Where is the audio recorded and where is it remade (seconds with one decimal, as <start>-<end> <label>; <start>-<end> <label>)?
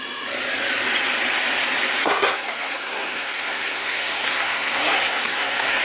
0.0-2.0 recorded; 2.0-5.8 remade